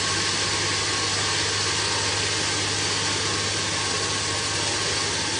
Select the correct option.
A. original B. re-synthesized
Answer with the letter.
A